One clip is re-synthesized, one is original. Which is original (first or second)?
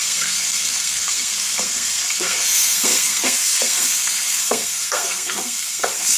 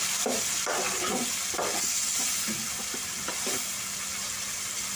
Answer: second